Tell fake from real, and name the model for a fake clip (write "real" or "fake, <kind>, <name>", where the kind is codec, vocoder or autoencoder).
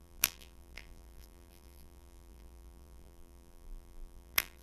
fake, vocoder, BigVGAN v2